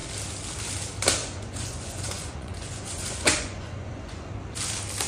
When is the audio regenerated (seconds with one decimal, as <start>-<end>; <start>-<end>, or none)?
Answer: 1.2-4.3

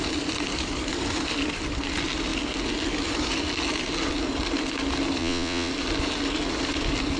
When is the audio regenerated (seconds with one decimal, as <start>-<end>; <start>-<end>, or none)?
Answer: 5.2-5.7

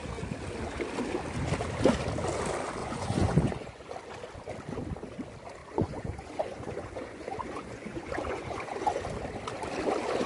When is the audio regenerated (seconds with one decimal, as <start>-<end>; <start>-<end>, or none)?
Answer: 2.8-3.9; 5.6-9.0

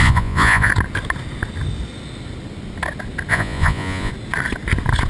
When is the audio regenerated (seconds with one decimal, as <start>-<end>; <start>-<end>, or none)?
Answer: 0.0-0.7; 3.3-4.1

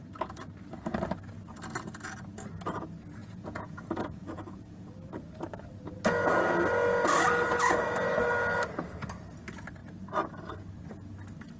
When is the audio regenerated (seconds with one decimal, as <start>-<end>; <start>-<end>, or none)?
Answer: 3.2-4.9

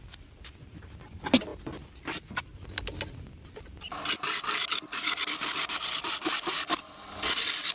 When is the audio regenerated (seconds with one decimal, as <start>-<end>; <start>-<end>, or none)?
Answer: none